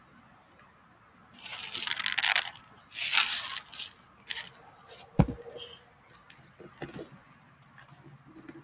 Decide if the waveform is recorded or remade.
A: recorded